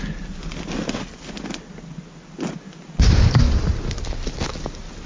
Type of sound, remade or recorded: recorded